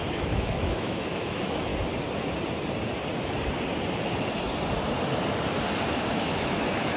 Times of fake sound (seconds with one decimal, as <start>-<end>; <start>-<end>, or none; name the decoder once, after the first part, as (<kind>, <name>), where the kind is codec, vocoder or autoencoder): 0.0-1.7 (autoencoder, DAC-VAE); 5.9-7.0